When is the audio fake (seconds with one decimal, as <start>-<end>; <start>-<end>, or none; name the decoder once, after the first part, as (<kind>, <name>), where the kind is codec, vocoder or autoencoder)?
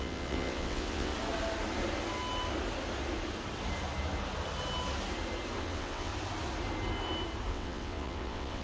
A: 0.0-1.1 (vocoder, WaveNeXt); 5.6-6.1; 7.5-8.6